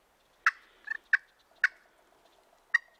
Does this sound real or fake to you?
real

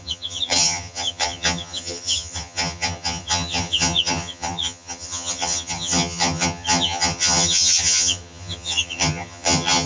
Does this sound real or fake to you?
fake